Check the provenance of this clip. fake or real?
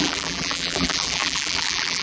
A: fake